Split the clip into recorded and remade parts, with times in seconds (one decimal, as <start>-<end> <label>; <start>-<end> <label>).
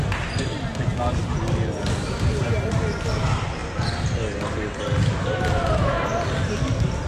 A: 0.0-7.1 recorded